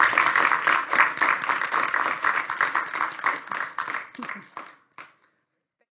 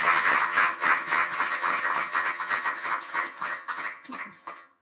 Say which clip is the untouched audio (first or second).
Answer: first